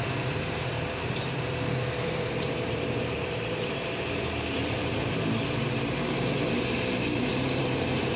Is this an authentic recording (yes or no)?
no